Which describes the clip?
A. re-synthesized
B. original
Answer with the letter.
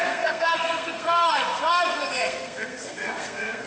A